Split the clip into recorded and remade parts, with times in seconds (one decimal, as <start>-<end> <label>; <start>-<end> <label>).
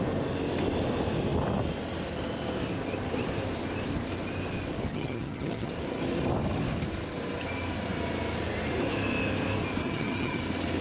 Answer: 0.0-4.9 recorded; 4.9-5.7 remade; 5.7-9.8 recorded; 9.8-10.4 remade; 10.4-10.8 recorded